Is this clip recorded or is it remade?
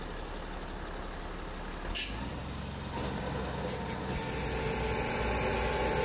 recorded